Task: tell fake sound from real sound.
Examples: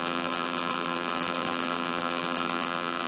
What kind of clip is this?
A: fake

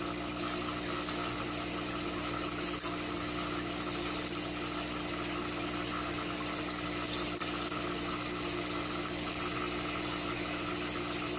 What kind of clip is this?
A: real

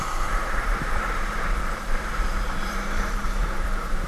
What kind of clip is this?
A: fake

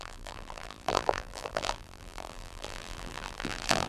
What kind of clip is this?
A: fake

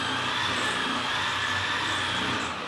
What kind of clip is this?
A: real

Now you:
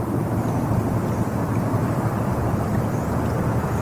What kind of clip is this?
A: fake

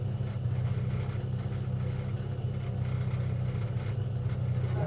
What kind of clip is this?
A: real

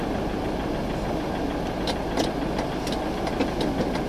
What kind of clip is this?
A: real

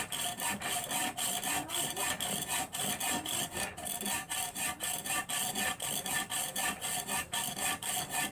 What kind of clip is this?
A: real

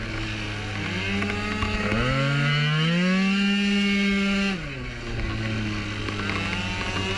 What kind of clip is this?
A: real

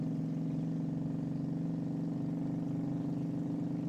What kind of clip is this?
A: real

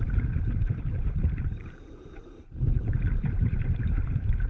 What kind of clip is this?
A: fake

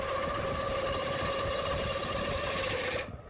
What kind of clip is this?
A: fake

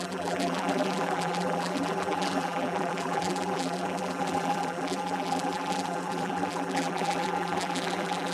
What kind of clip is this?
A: fake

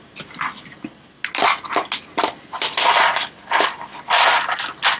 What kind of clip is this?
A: real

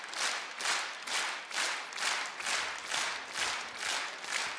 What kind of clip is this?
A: real